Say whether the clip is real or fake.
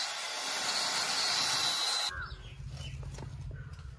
real